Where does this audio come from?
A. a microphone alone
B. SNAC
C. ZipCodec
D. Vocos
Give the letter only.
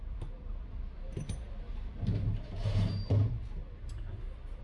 A